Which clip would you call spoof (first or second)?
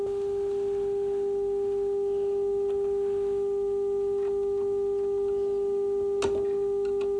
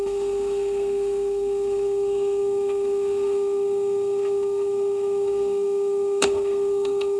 second